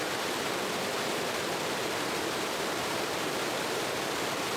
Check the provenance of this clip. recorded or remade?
remade